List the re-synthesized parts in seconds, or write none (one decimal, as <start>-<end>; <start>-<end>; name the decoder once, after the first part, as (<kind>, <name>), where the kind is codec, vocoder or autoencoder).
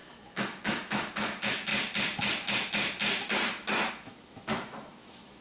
0.0-1.7 (autoencoder, DAC-VAE); 3.9-5.4